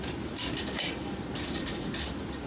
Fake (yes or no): no